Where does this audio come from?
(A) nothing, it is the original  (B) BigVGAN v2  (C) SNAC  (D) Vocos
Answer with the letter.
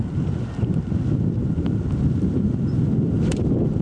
A